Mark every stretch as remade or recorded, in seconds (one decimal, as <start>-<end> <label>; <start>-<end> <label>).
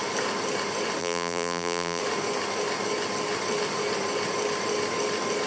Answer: 0.0-1.0 recorded; 1.0-2.0 remade; 2.0-5.5 recorded